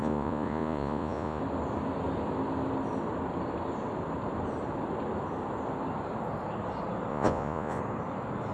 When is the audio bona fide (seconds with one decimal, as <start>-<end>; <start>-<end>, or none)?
1.4-7.1; 7.8-8.5